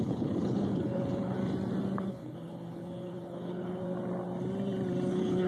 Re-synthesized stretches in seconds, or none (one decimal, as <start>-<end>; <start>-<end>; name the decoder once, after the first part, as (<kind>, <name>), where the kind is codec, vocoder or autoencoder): 0.0-1.4 (codec, HILCodec); 2.1-3.8; 5.1-5.5